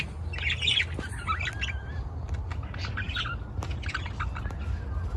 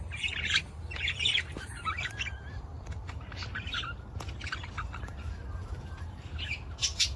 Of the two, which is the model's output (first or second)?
second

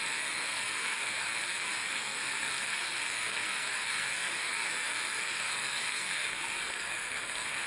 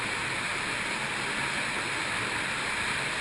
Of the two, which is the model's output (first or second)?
first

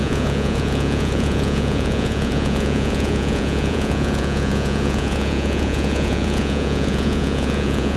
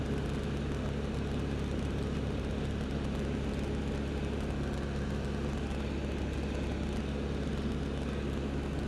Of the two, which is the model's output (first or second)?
first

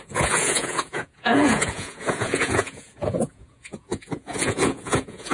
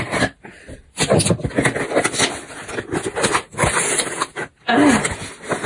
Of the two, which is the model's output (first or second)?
first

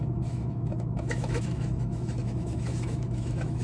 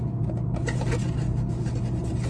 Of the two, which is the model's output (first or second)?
first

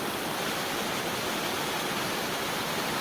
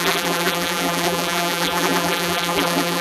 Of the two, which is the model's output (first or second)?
second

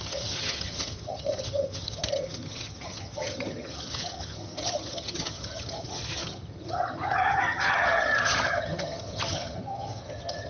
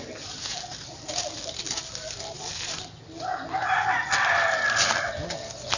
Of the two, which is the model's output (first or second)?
first